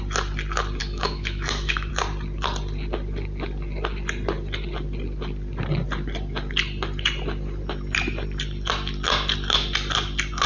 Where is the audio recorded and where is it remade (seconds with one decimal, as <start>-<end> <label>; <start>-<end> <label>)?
0.0-0.8 recorded; 0.8-1.9 remade; 1.9-10.5 recorded